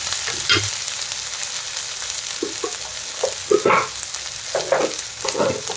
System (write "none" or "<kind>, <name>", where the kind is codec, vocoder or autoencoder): none